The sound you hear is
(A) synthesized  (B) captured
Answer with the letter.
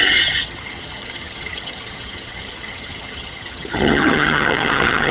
A